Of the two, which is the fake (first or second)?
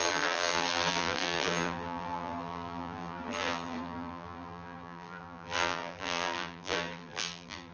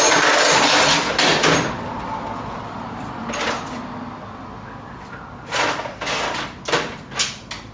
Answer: first